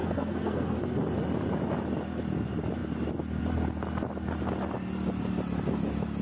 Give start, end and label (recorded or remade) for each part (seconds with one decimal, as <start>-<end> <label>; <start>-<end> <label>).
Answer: 0.0-0.8 remade; 0.8-6.2 recorded